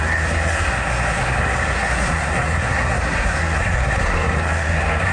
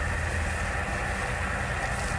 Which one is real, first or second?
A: second